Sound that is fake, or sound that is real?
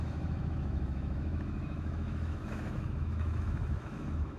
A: fake